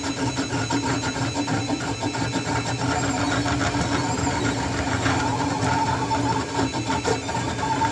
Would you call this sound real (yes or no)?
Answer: yes